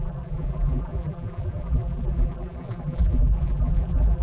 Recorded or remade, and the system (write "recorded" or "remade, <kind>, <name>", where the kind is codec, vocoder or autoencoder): remade, vocoder, BigVGAN v2